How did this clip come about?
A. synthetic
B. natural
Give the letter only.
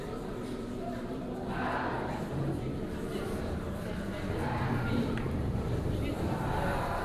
A